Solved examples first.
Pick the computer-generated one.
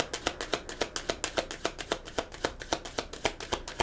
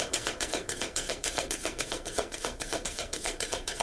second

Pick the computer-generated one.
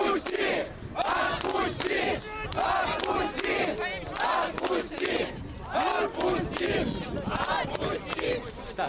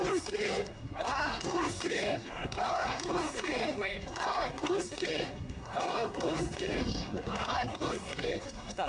second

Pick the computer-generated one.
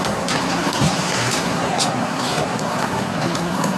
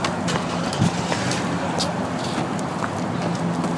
first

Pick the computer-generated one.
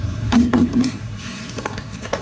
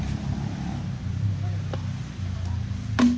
first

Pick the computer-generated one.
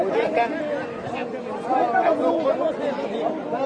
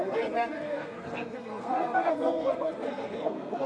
second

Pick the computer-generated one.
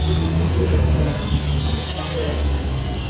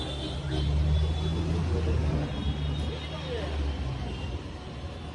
first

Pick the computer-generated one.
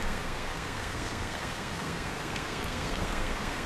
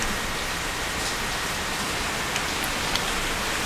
first